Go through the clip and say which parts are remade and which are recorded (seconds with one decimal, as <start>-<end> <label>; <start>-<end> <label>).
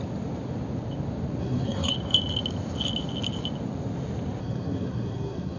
0.0-1.4 recorded; 1.4-1.9 remade; 1.9-4.4 recorded; 4.4-5.6 remade